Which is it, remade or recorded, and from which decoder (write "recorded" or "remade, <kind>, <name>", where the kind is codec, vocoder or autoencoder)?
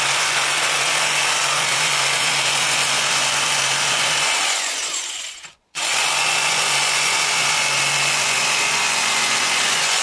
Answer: remade, vocoder, Vocos